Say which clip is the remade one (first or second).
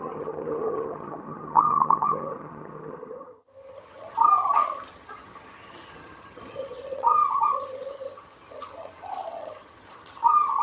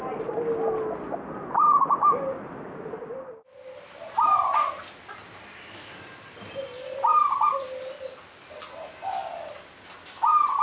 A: first